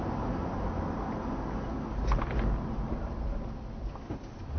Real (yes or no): yes